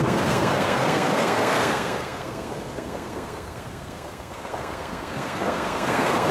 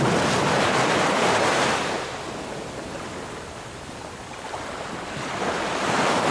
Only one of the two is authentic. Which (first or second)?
second